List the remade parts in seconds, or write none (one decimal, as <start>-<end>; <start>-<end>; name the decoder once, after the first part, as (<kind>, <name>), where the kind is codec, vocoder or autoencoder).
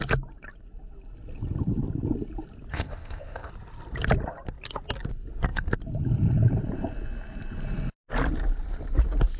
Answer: 2.7-3.5 (codec, ZipCodec)